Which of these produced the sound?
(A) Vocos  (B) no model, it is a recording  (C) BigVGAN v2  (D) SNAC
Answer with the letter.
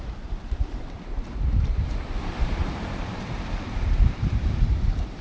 C